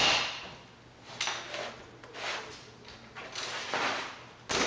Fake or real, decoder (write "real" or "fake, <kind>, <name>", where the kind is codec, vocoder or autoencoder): real